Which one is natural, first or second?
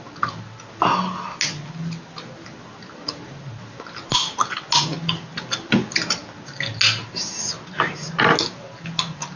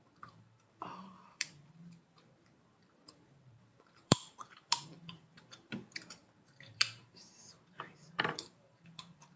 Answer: first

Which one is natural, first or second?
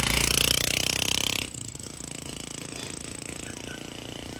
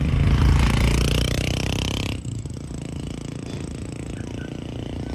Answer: first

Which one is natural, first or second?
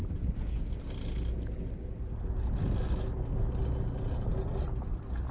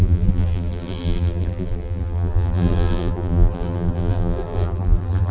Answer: first